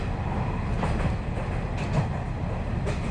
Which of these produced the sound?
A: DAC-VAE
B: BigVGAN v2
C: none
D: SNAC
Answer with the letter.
C